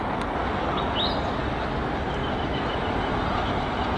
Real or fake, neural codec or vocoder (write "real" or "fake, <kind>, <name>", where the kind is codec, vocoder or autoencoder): real